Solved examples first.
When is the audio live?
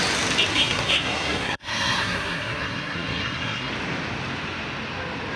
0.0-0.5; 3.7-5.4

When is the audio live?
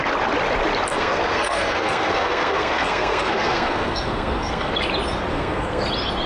0.0-0.9; 4.7-5.3; 5.8-6.3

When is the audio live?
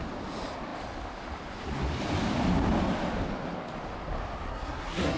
0.0-4.5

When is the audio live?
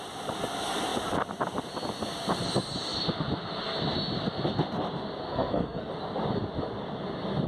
0.0-5.3; 5.9-7.5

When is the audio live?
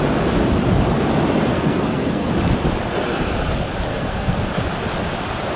0.0-1.5; 2.3-3.9; 4.5-5.6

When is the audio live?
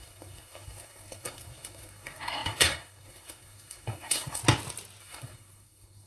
4.4-5.0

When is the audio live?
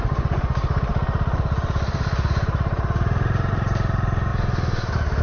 0.0-5.2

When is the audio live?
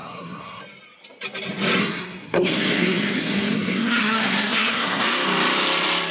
0.6-1.8; 5.0-6.1